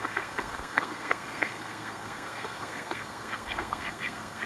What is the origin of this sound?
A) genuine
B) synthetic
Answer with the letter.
B